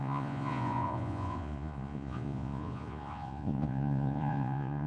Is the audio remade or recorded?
remade